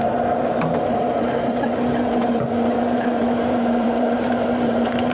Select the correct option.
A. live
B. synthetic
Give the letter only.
B